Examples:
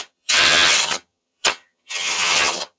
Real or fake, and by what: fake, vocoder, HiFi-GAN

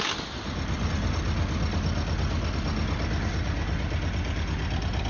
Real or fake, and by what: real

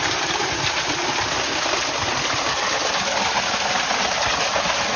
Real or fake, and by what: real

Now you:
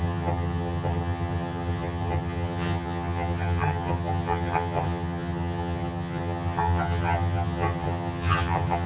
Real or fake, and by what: fake, vocoder, HiFi-GAN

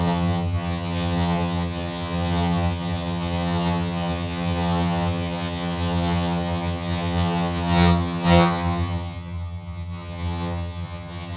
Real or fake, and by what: fake, vocoder, HiFi-GAN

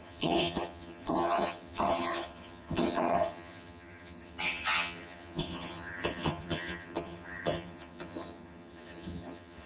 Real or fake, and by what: fake, vocoder, HiFi-GAN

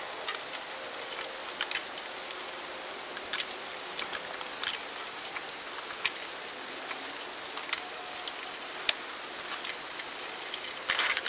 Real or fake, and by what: real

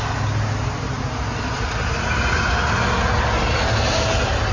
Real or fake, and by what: real